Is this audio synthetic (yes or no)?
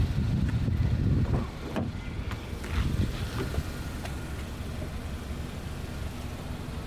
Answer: no